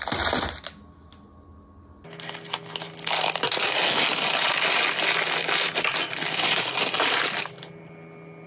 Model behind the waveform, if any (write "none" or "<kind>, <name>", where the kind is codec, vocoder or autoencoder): none